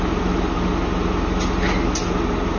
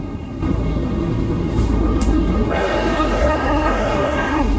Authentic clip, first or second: first